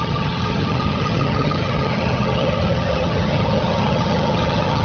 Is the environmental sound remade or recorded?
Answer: remade